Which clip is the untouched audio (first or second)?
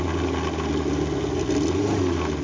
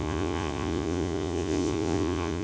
first